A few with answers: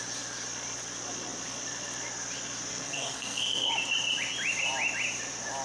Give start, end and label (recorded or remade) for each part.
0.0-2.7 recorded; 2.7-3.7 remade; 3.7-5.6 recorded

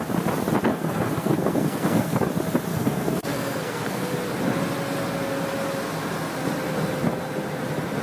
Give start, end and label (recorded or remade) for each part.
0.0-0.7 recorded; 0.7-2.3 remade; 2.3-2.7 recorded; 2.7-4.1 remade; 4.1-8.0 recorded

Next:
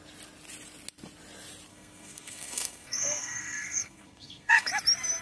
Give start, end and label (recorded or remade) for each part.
0.0-1.7 recorded; 1.7-4.7 remade; 4.7-5.2 recorded

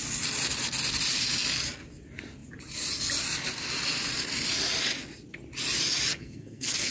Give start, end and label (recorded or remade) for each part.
0.0-6.1 recorded; 6.1-6.9 remade